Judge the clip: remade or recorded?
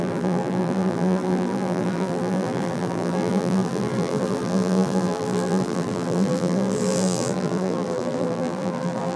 remade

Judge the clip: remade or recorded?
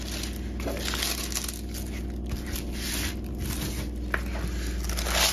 recorded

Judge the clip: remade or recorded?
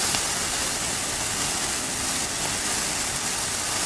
recorded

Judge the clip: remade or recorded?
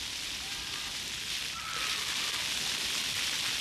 recorded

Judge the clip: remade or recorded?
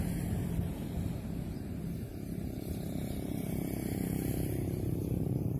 remade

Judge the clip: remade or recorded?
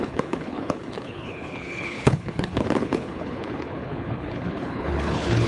remade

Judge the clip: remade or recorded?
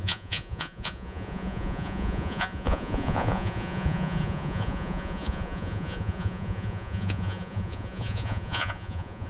remade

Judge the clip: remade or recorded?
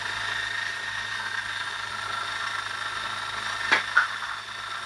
recorded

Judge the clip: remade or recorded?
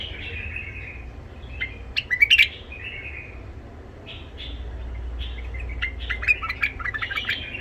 recorded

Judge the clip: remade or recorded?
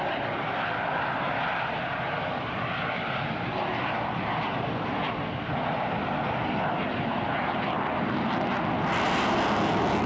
recorded